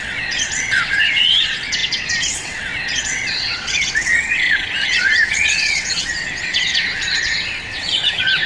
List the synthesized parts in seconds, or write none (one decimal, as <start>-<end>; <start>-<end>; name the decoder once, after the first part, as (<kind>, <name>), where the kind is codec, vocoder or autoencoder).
0.0-8.5 (vocoder, WaveNeXt)